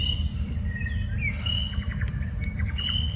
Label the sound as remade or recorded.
recorded